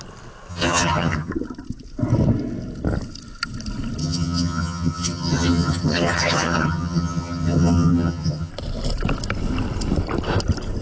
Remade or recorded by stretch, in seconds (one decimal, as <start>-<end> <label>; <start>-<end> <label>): 0.0-0.5 recorded; 0.5-1.3 remade; 1.3-4.0 recorded; 4.0-8.5 remade; 8.5-10.8 recorded